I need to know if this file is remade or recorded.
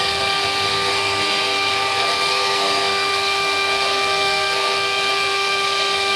remade